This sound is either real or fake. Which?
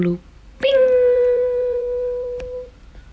fake